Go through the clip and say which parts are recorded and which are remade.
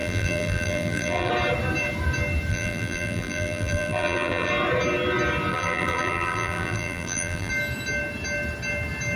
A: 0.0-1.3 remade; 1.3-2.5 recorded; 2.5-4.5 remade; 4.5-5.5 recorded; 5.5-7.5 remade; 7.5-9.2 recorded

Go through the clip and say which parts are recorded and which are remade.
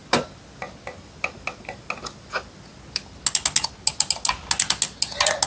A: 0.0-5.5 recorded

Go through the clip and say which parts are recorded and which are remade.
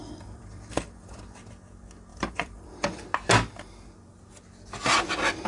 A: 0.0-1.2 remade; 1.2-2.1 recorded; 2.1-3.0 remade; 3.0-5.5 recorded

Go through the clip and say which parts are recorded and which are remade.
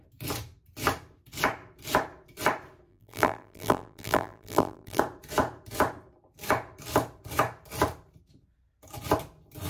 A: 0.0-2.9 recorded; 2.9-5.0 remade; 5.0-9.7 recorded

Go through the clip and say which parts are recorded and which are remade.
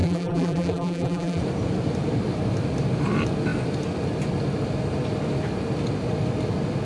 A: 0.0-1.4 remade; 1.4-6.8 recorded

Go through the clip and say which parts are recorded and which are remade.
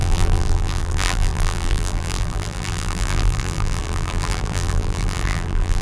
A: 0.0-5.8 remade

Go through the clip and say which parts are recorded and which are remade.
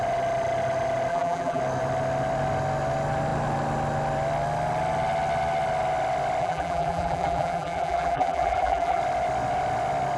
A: 0.0-1.1 recorded; 1.1-1.6 remade; 1.6-6.4 recorded; 6.4-9.0 remade; 9.0-10.2 recorded